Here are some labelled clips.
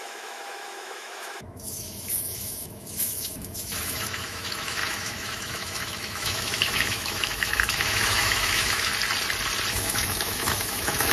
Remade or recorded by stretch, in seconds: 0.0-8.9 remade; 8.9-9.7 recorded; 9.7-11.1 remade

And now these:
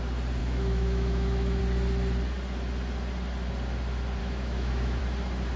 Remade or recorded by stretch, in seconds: 0.0-0.4 recorded; 0.4-1.6 remade; 1.6-4.2 recorded; 4.2-5.0 remade; 5.0-5.6 recorded

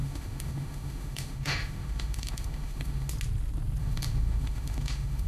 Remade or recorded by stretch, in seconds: 0.0-3.1 remade; 3.1-3.8 recorded; 3.8-5.3 remade

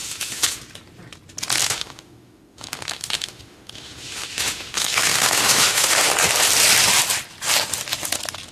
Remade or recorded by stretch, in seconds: 0.0-0.6 remade; 0.6-1.6 recorded; 1.6-6.1 remade; 6.1-8.5 recorded

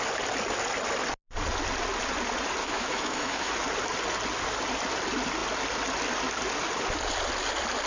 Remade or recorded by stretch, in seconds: 0.0-2.6 recorded; 2.6-3.5 remade; 3.5-7.9 recorded